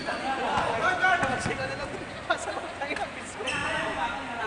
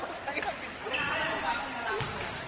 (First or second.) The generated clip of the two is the second